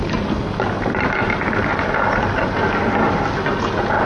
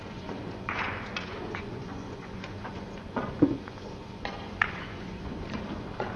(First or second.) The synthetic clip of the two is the second